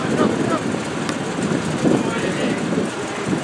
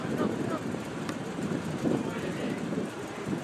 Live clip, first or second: first